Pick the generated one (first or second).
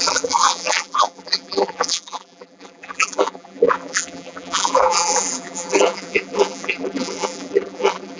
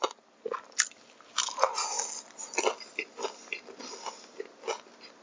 first